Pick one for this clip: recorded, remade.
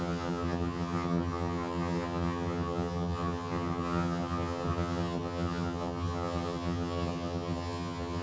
remade